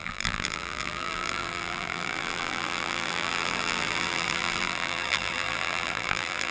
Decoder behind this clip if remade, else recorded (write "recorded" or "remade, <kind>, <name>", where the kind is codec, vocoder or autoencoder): remade, vocoder, BigVGAN v2